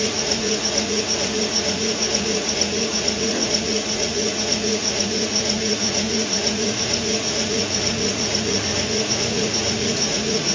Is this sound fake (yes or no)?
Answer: yes